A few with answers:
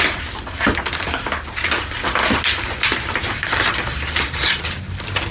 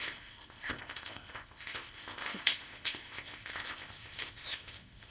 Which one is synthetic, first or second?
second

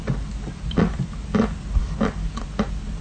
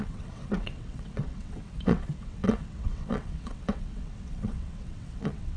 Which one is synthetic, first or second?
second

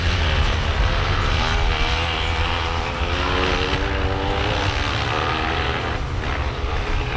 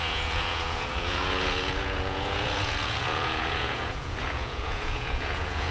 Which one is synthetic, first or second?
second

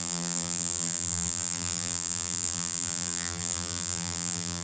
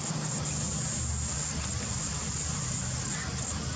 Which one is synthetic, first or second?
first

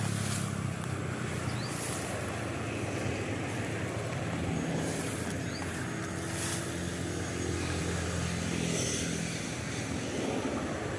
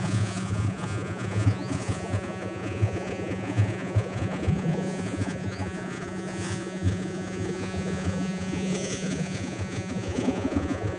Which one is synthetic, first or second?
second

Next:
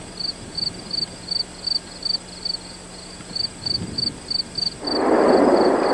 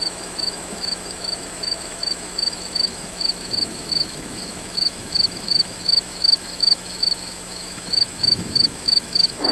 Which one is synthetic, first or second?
second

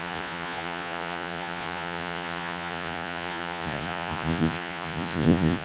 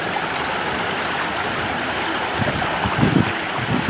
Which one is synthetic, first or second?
first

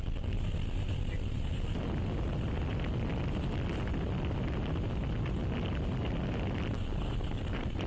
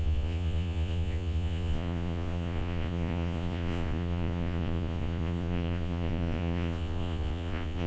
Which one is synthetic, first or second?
second